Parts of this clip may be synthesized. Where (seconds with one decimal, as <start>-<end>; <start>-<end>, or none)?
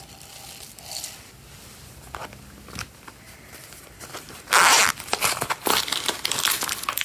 none